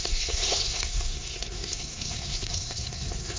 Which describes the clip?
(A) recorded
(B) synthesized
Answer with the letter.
B